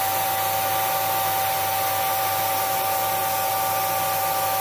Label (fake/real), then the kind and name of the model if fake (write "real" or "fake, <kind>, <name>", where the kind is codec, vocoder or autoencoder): real